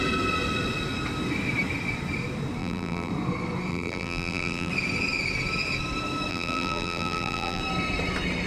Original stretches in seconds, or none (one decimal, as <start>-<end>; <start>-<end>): 0.0-2.6; 3.1-3.7; 4.7-6.3; 7.6-8.5